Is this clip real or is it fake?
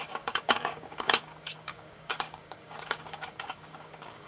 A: fake